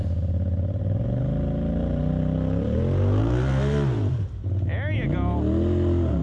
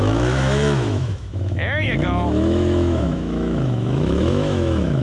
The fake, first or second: second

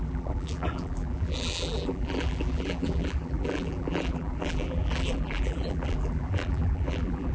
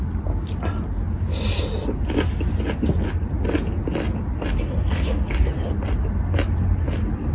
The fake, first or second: first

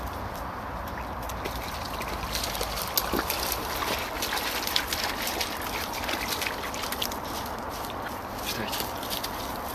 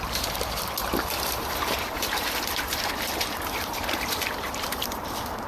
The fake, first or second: second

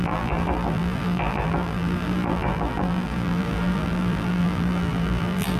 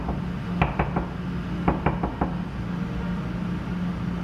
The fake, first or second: first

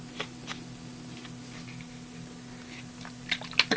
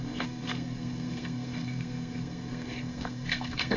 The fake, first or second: second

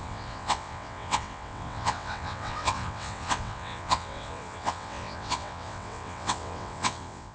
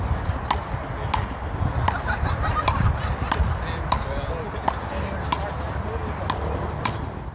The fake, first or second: first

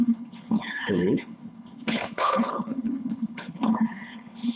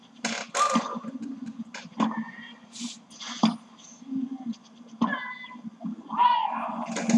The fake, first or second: first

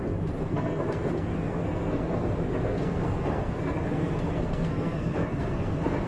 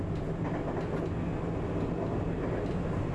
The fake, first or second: first